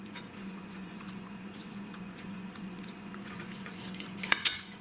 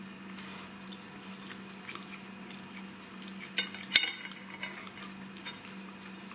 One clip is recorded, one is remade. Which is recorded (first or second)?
second